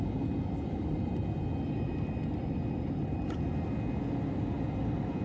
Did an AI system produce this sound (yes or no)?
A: no